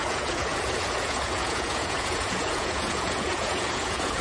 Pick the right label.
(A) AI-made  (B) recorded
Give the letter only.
A